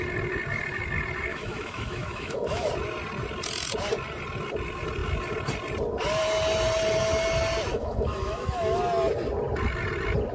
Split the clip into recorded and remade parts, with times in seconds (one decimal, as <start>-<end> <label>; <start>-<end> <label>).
0.0-1.3 recorded; 1.3-2.7 remade; 2.7-7.7 recorded; 7.7-8.8 remade; 8.8-10.3 recorded